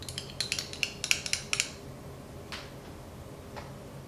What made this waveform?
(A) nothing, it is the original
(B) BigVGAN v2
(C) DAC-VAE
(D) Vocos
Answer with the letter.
A